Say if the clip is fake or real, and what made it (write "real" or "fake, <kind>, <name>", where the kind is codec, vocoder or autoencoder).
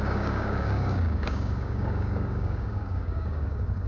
fake, codec, DAC